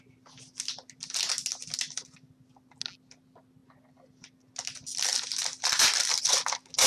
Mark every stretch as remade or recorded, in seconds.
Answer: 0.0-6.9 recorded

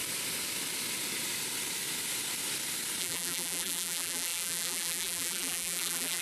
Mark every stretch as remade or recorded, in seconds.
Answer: 0.0-3.0 recorded; 3.0-6.2 remade

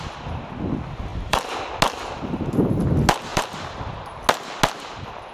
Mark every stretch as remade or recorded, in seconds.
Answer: 0.0-1.1 recorded; 1.1-1.6 remade; 1.6-3.3 recorded; 3.3-4.2 remade; 4.2-5.3 recorded

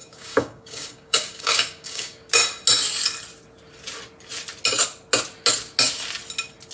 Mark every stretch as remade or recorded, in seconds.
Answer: 0.0-2.3 remade; 2.3-6.7 recorded

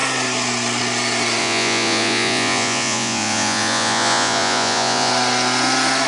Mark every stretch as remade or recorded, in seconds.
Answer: 0.0-1.4 recorded; 1.4-5.1 remade; 5.1-6.1 recorded

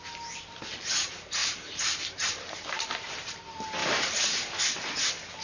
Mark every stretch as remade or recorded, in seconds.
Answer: 0.0-1.4 recorded; 1.4-3.4 remade; 3.4-3.8 recorded; 3.8-4.6 remade; 4.6-5.4 recorded